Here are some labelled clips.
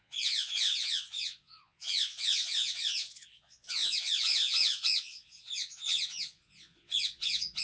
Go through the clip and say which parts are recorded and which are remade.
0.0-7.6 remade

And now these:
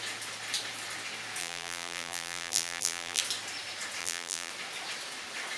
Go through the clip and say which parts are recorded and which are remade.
0.0-1.4 recorded; 1.4-3.2 remade; 3.2-4.0 recorded; 4.0-4.5 remade; 4.5-5.6 recorded

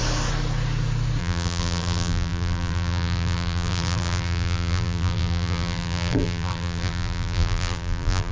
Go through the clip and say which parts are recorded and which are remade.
0.0-1.2 recorded; 1.2-8.3 remade

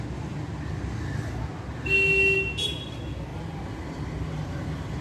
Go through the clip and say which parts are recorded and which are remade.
0.0-3.3 recorded; 3.3-5.0 remade

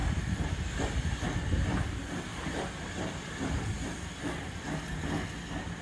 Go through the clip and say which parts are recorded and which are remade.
0.0-2.3 recorded; 2.3-3.9 remade; 3.9-5.8 recorded

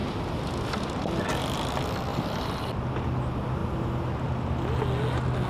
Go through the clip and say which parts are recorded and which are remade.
0.0-2.1 recorded; 2.1-2.7 remade; 2.7-3.6 recorded; 3.6-4.1 remade; 4.1-5.5 recorded

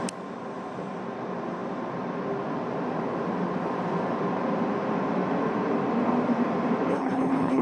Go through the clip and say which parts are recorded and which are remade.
0.0-6.9 recorded; 6.9-7.6 remade